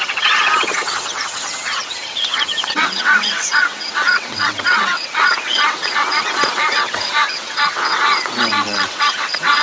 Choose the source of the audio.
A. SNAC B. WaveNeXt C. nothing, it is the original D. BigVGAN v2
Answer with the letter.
B